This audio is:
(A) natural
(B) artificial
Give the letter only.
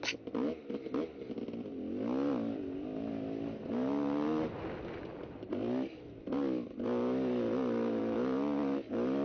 A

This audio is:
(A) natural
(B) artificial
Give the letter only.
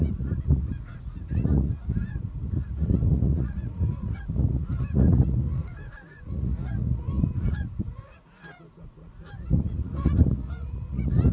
B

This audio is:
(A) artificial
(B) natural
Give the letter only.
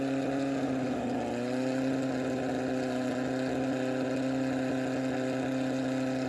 B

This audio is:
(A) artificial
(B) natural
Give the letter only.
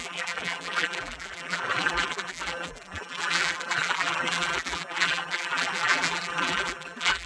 A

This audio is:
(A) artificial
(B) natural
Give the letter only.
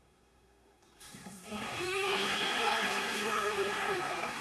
A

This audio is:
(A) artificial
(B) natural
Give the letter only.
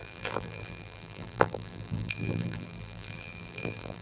A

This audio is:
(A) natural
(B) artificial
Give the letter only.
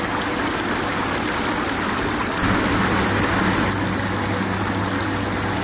A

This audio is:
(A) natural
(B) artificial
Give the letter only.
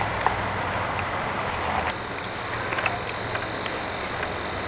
A